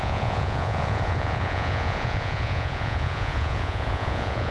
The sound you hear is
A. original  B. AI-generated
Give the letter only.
B